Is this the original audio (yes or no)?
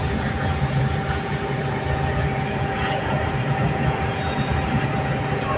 no